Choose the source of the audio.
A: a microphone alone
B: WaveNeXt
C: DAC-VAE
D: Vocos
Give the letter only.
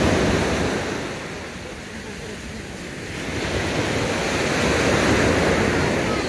A